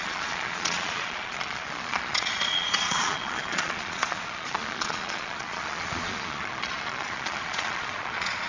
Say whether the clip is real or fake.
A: fake